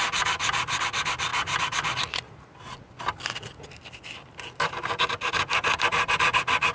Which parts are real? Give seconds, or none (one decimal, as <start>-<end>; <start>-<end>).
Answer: 0.0-6.7